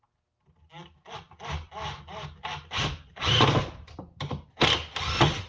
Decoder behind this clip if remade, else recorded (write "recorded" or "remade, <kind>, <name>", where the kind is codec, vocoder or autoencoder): recorded